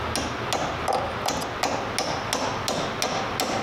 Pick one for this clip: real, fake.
real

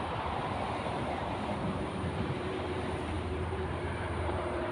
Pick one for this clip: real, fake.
fake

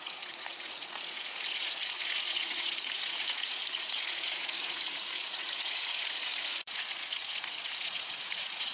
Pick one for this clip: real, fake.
fake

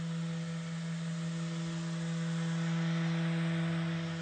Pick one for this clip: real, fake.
real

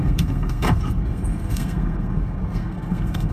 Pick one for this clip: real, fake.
fake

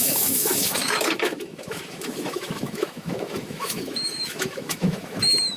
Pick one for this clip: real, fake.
fake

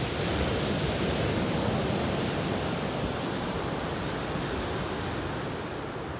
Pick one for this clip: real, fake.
real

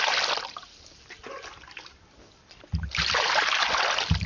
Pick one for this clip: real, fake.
real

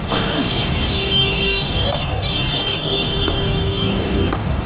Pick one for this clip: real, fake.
fake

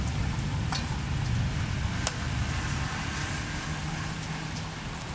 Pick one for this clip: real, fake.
real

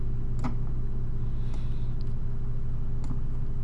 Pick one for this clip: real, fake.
real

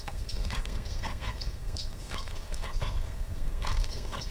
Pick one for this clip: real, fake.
fake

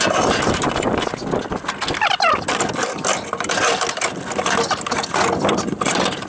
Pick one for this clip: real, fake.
real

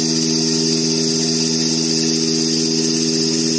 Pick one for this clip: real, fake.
real